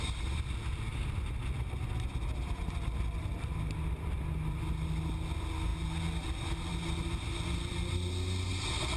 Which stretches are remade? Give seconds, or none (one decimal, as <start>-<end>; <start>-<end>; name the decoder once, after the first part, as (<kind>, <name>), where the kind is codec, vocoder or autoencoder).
none